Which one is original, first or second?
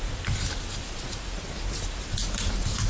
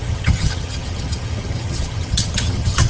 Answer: first